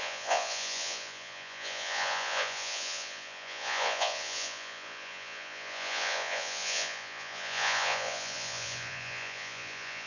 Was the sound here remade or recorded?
remade